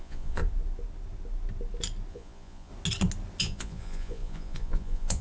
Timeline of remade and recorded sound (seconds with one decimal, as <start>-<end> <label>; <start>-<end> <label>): 0.0-0.4 remade; 0.4-2.1 recorded; 2.1-2.7 remade; 2.7-3.4 recorded; 3.4-5.2 remade

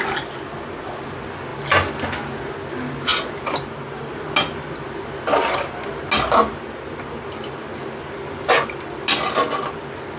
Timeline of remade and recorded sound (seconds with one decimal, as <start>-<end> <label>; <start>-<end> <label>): 0.0-10.2 recorded